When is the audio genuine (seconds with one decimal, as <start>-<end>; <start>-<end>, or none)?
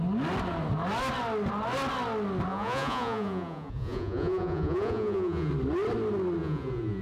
0.0-2.5; 5.5-6.4